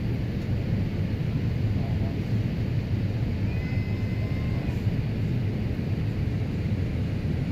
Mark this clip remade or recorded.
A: recorded